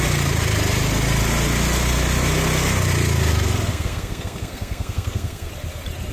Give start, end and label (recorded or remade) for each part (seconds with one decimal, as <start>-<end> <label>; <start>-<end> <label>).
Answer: 0.0-3.7 recorded; 3.7-5.5 remade; 5.5-6.1 recorded